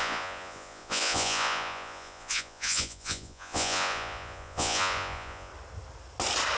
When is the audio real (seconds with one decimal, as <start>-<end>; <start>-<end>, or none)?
5.5-6.6

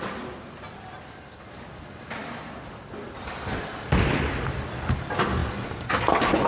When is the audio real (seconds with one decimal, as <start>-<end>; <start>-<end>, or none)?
0.0-6.5

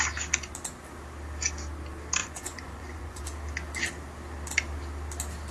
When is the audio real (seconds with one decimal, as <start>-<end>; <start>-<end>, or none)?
0.0-2.2; 3.2-5.5

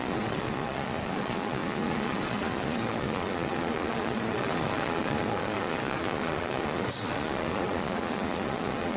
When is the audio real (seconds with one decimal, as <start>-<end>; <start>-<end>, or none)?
none

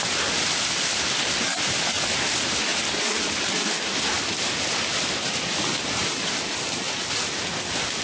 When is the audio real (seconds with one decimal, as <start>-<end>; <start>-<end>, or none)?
0.0-8.0

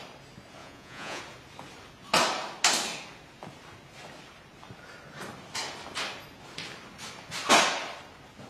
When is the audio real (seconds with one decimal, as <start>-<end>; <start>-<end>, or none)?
0.0-0.6; 1.2-8.5

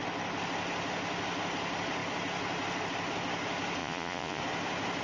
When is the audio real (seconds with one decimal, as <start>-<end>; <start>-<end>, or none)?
0.0-3.8; 4.4-5.0

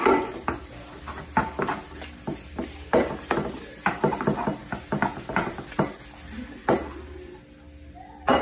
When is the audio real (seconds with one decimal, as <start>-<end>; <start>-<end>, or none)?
0.0-8.4